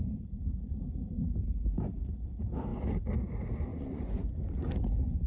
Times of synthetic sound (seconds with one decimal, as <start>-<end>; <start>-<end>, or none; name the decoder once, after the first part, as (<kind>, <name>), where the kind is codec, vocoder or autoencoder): 3.7-4.3 (vocoder, Vocos)